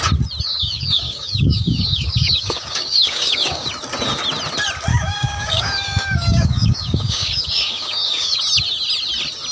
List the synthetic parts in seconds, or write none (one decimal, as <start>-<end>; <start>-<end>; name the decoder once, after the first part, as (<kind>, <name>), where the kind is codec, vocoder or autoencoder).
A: 0.5-3.7 (codec, DAC); 4.9-8.4